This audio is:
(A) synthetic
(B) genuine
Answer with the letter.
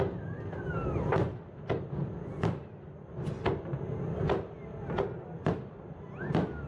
B